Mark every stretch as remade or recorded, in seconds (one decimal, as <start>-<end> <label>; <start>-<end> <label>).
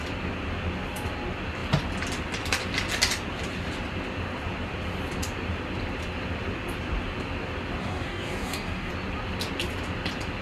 0.0-7.8 recorded; 7.8-8.9 remade; 8.9-10.4 recorded